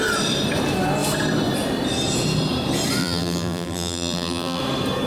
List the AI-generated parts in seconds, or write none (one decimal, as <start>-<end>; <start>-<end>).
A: 3.0-4.6